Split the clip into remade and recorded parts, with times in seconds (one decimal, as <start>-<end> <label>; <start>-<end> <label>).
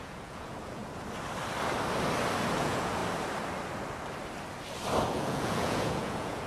0.0-0.8 remade; 0.8-2.6 recorded; 2.6-3.0 remade; 3.0-5.1 recorded; 5.1-6.5 remade